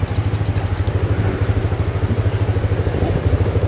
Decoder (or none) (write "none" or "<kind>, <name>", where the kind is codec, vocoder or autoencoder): none